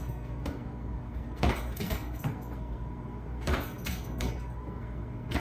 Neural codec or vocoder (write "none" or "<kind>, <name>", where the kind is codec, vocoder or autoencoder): codec, SNAC